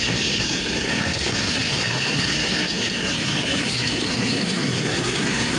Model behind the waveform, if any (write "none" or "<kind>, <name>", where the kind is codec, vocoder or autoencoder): codec, SNAC